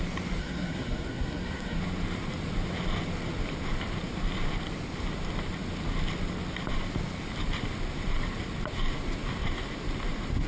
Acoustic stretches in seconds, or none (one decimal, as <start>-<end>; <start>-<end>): 0.0-0.4; 1.8-10.5